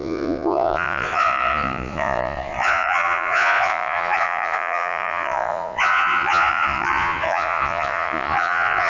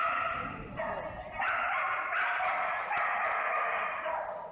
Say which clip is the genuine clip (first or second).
second